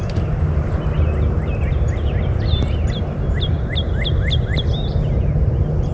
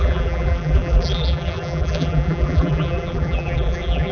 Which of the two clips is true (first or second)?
first